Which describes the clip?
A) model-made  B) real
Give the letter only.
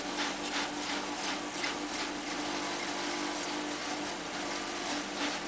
B